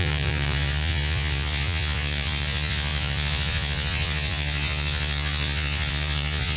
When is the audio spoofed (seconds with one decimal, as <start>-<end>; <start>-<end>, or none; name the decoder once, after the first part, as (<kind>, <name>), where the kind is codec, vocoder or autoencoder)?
0.0-6.6 (vocoder, Vocos)